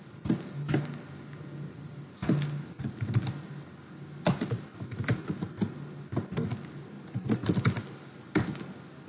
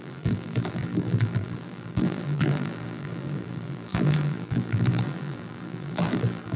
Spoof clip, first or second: second